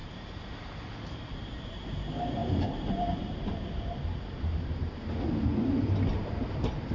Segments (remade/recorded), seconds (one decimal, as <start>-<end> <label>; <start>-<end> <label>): 0.0-1.0 recorded; 1.0-5.0 remade; 5.0-6.5 recorded; 6.5-6.9 remade